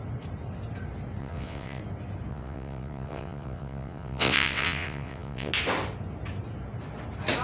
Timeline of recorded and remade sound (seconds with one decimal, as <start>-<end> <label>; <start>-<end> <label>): 0.0-1.2 recorded; 1.2-1.8 remade; 1.8-2.3 recorded; 2.3-5.5 remade; 5.5-7.4 recorded